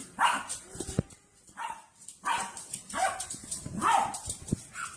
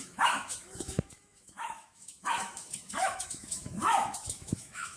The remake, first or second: second